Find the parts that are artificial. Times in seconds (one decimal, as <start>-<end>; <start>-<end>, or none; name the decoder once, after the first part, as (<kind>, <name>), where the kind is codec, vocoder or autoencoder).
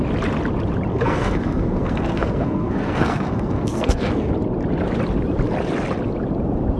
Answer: 0.9-4.3 (codec, SNAC)